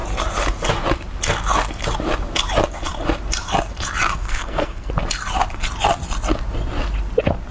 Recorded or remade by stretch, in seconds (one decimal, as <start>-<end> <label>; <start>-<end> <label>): 0.0-4.2 recorded; 4.2-4.9 remade; 4.9-7.5 recorded